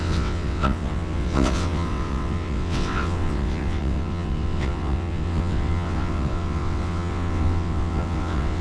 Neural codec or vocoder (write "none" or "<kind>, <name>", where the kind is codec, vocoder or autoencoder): vocoder, WaveNeXt